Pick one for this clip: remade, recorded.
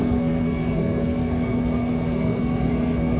remade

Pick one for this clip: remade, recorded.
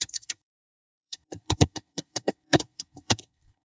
remade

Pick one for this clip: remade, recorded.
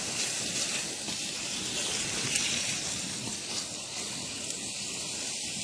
recorded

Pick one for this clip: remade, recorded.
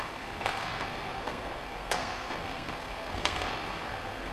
remade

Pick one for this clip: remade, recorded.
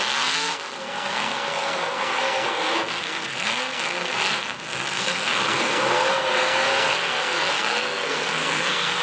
remade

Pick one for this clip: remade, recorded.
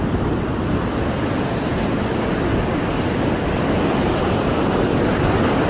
recorded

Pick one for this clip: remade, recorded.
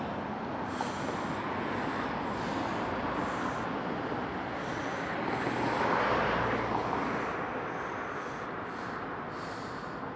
recorded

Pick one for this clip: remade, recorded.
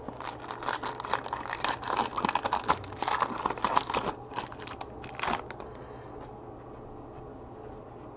recorded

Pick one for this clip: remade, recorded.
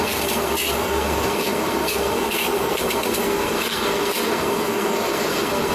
remade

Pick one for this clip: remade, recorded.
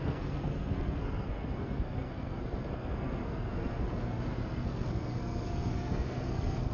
remade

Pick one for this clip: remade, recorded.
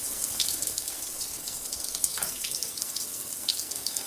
remade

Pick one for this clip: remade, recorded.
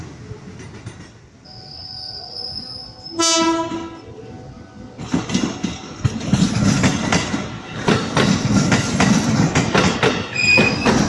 recorded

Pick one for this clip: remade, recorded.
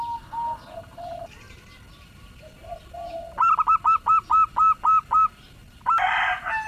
recorded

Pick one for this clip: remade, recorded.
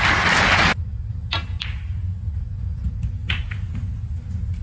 recorded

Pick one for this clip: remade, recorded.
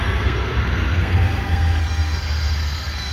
remade